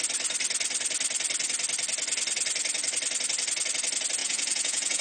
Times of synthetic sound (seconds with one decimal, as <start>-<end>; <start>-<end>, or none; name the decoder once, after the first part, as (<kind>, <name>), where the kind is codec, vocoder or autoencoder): 4.2-5.0 (vocoder, Vocos)